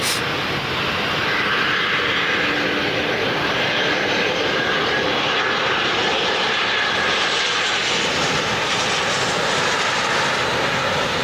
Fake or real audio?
real